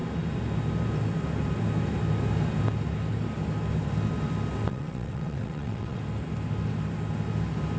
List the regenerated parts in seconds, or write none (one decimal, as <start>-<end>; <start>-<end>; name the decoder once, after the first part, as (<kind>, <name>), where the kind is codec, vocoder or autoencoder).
4.7-6.0 (vocoder, WaveNeXt)